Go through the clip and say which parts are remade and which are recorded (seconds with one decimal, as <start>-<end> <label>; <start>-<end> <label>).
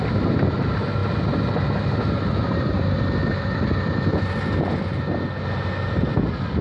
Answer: 0.0-6.6 recorded